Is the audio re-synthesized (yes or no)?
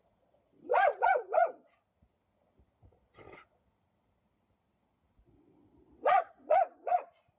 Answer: yes